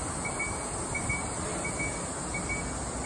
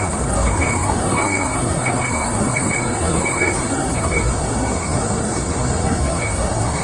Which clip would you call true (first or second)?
first